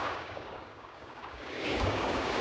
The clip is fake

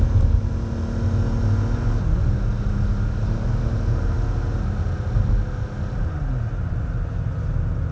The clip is real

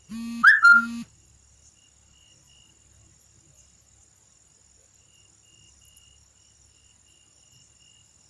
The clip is real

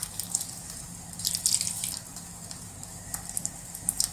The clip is real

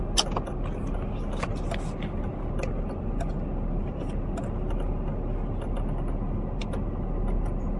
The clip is real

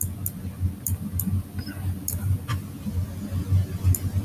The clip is real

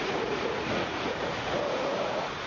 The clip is fake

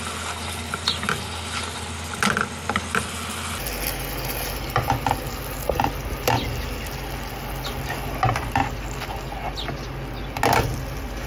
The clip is real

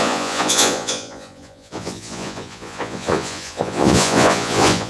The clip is fake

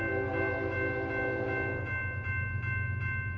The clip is real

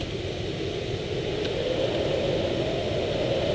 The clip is real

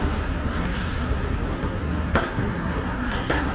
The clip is fake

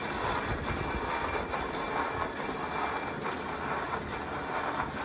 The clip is real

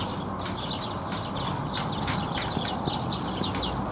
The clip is real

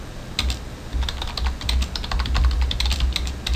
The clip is real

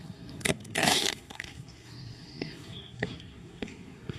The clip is fake